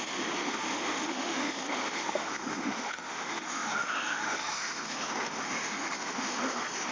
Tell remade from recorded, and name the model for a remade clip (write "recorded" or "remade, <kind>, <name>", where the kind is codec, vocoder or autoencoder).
remade, autoencoder, DAC-VAE